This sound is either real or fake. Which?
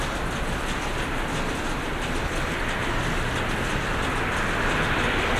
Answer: real